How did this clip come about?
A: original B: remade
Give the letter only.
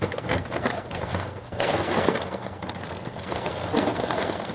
B